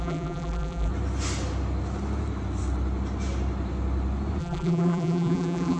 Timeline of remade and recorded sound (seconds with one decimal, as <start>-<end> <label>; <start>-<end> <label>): 0.0-0.9 remade; 0.9-4.4 recorded; 4.4-5.8 remade